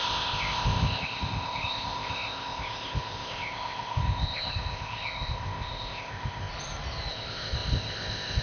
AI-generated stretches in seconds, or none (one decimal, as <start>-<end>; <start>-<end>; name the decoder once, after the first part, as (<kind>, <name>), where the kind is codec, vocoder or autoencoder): 0.0-6.5 (codec, ZipCodec); 7.1-8.4